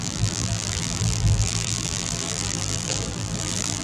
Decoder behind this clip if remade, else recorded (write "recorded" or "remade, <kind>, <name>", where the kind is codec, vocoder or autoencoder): remade, vocoder, BigVGAN v2